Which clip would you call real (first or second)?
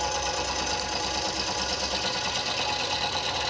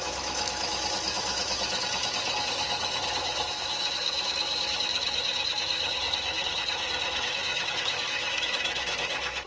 first